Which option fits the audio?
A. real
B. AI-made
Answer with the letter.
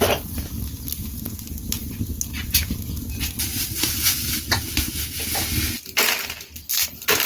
A